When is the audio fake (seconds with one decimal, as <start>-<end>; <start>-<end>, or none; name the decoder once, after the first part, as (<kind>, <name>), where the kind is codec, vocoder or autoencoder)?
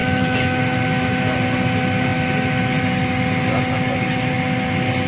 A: 0.0-0.6 (autoencoder, DAC-VAE)